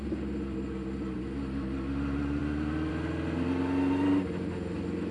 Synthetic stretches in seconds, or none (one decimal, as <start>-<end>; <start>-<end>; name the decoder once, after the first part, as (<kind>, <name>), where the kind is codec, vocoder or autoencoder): none